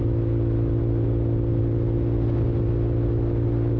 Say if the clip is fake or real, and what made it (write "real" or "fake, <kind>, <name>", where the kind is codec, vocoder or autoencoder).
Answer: real